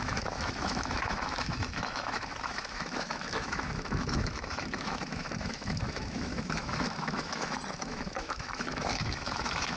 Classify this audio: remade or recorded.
remade